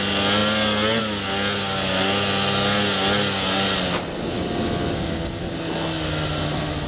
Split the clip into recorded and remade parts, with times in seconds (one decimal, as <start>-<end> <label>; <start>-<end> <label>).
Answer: 0.0-6.9 recorded